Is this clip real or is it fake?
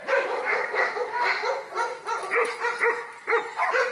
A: real